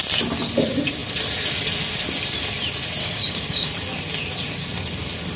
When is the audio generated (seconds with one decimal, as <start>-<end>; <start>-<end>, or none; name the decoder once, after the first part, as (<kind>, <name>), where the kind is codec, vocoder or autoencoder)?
3.0-3.7 (codec, DAC)